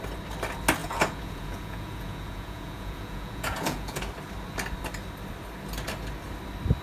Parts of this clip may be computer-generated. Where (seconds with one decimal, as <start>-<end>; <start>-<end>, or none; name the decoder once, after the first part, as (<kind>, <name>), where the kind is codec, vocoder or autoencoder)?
0.8-4.0 (vocoder, Vocos)